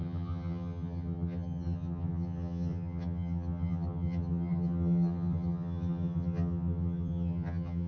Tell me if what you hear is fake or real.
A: fake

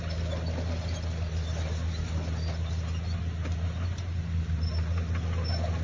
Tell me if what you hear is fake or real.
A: real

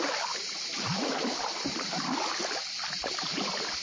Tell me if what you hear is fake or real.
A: real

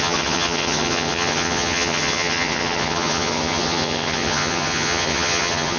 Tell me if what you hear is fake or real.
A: fake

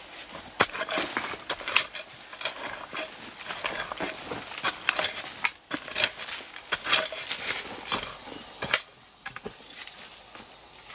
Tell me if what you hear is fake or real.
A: real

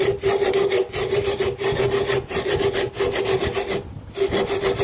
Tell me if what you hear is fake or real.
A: real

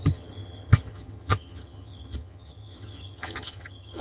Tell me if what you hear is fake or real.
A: fake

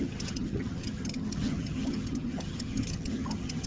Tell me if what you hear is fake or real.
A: fake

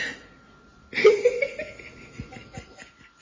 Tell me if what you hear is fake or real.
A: real